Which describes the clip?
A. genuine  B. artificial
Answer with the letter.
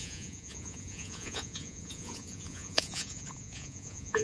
B